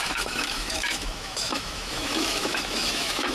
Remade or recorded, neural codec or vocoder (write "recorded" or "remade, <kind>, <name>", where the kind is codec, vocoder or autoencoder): remade, autoencoder, DAC-VAE